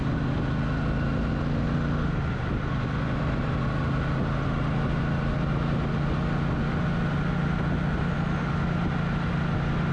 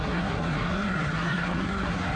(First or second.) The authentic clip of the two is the first